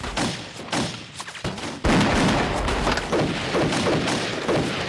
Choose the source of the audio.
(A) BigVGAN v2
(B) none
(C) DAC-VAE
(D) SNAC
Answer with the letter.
B